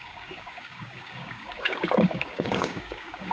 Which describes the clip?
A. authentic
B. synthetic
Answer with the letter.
B